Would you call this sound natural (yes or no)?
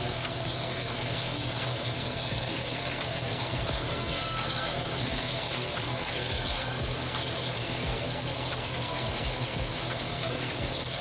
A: no